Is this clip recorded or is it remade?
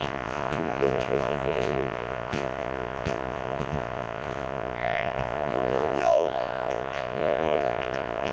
remade